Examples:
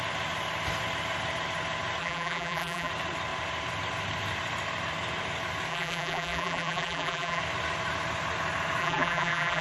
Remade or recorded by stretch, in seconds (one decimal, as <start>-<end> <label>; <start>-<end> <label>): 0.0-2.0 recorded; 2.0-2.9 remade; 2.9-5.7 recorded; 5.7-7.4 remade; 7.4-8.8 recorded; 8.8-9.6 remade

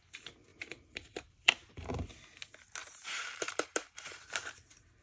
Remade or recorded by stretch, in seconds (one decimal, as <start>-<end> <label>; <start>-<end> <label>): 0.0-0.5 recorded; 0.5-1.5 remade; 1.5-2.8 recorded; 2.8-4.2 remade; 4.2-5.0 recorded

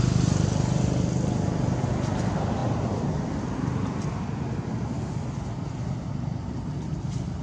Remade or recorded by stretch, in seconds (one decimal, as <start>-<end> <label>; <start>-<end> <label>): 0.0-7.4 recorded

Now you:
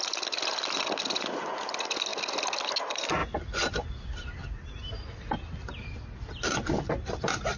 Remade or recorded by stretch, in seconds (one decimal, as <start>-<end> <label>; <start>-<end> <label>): 0.0-7.6 recorded